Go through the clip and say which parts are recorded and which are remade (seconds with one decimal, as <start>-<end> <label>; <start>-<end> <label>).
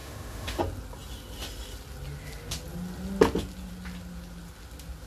0.0-0.6 remade; 0.6-5.1 recorded